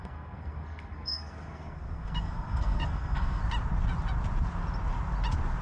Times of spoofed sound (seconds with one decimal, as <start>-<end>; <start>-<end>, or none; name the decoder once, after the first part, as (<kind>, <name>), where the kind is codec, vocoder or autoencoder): 0.0-3.4 (codec, SNAC)